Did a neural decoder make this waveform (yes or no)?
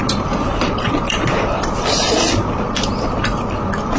yes